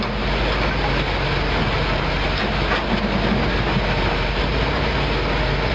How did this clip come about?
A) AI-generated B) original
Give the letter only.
B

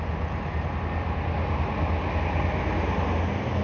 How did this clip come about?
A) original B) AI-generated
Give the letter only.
A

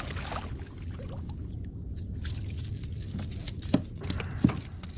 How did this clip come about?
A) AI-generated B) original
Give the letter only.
B